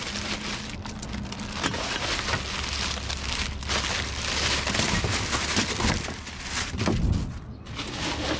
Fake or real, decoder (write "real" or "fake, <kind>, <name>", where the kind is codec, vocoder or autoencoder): real